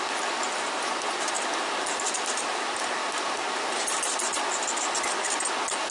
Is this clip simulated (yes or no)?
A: no